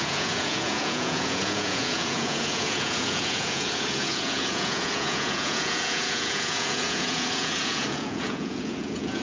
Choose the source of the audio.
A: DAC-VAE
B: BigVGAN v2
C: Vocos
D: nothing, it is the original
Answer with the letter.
C